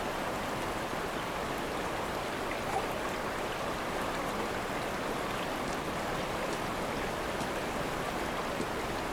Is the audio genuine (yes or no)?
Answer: yes